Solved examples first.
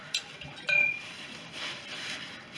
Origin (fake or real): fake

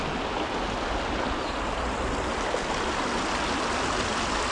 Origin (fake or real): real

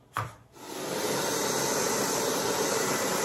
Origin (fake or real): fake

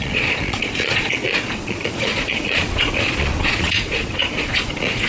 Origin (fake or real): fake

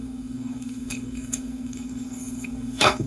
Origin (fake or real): fake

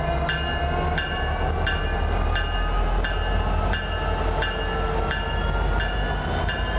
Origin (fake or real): real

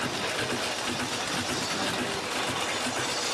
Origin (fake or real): real